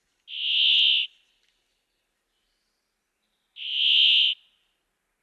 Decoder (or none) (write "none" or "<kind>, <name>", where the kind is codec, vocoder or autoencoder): none